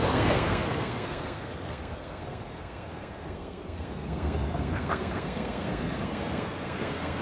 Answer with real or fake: fake